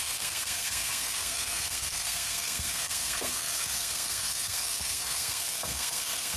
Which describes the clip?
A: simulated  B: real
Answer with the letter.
A